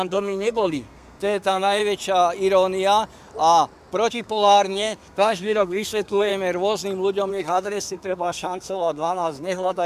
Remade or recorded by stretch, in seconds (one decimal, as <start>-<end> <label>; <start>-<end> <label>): 0.0-1.8 remade; 1.8-4.1 recorded; 4.1-6.3 remade; 6.3-7.3 recorded; 7.3-9.9 remade